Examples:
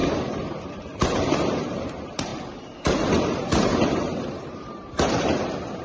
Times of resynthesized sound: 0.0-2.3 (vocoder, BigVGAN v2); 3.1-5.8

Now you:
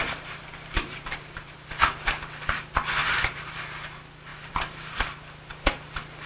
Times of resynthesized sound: 0.0-1.7 (vocoder, BigVGAN v2); 3.0-3.6; 4.3-5.2

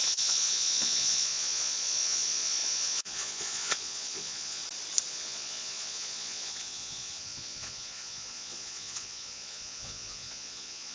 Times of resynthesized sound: 0.0-4.6 (vocoder, Vocos); 5.1-10.9

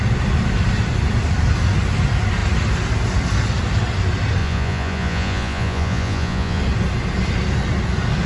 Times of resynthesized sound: 4.4-6.6 (vocoder, Vocos)

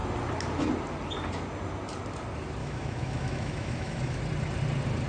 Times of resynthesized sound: 2.6-4.2 (autoencoder, DAC-VAE)

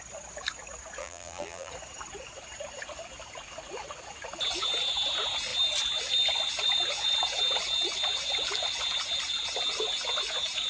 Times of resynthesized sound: 1.0-1.7 (vocoder, BigVGAN v2)

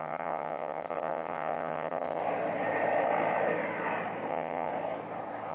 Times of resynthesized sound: 0.0-2.2 (vocoder, HiFi-GAN); 4.3-4.7